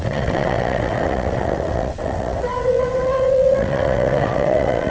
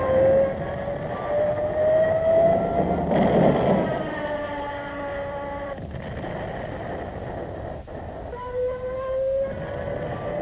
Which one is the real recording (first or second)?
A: second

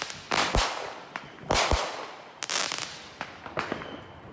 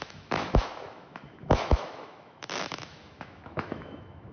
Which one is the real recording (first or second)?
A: first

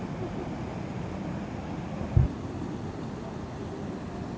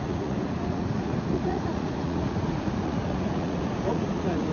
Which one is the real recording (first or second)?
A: first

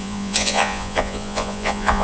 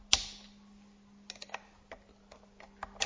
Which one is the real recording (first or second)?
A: second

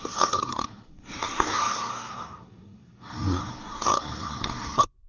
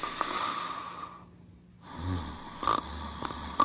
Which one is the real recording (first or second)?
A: second